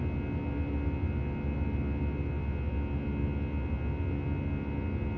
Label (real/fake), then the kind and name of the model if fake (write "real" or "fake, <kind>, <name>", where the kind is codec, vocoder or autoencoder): real